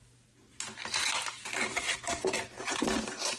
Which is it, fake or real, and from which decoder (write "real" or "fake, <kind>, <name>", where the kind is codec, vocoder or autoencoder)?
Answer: real